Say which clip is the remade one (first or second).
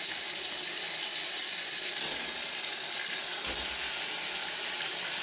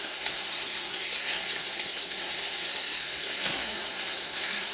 second